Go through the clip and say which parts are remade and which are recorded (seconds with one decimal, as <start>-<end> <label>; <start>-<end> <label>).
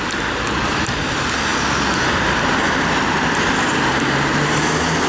0.0-5.1 recorded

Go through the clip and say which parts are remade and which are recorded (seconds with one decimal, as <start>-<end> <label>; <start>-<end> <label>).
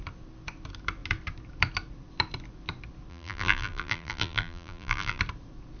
0.0-3.1 recorded; 3.1-5.2 remade; 5.2-5.8 recorded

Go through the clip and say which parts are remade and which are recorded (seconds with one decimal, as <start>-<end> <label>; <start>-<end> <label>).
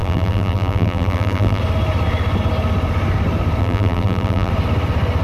0.0-1.6 remade; 1.6-3.6 recorded; 3.6-4.5 remade; 4.5-5.2 recorded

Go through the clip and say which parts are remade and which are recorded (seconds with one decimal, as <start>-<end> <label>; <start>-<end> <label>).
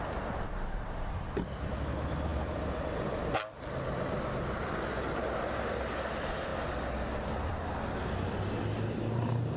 0.0-9.6 recorded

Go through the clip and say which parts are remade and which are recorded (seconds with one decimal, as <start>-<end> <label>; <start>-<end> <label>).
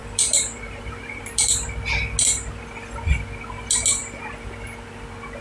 0.0-1.5 remade; 1.5-5.4 recorded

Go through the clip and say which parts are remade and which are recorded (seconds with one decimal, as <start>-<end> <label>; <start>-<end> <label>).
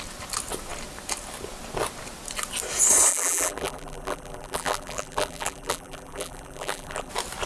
0.0-3.1 recorded; 3.1-7.1 remade; 7.1-7.5 recorded